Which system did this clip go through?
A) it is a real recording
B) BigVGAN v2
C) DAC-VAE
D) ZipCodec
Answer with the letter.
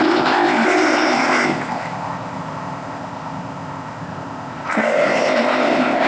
D